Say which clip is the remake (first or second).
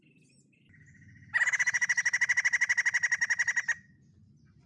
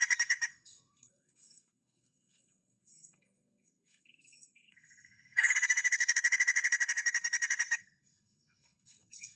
second